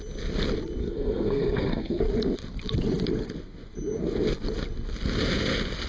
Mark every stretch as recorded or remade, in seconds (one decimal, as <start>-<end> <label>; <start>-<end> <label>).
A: 0.0-0.8 recorded; 0.8-2.0 remade; 2.0-5.9 recorded